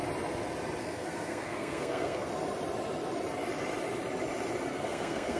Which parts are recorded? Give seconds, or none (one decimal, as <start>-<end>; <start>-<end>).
0.0-0.8; 2.3-4.7